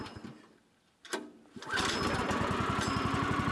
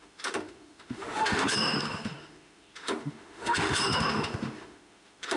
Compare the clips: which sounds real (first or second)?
first